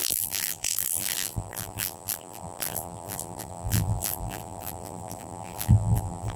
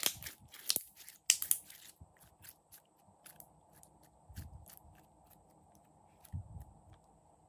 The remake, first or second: first